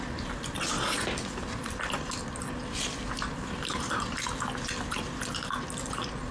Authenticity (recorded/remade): recorded